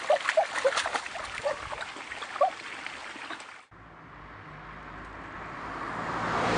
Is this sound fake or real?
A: real